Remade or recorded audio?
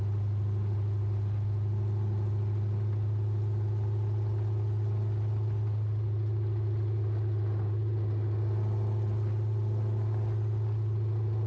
recorded